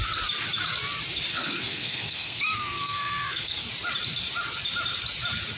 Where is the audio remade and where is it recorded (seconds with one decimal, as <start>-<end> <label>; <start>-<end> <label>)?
0.0-1.3 recorded; 1.3-3.6 remade; 3.6-5.6 recorded